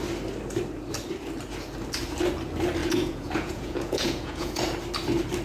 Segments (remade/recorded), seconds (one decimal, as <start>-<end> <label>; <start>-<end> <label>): 0.0-2.8 recorded; 2.8-4.6 remade; 4.6-5.4 recorded